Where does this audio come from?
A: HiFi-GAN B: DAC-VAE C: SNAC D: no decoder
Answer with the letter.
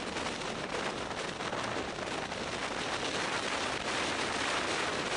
D